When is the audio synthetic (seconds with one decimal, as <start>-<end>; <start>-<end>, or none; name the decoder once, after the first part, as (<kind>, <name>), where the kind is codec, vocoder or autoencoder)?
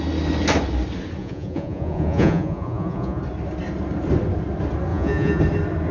1.2-3.2 (vocoder, Vocos); 4.9-5.4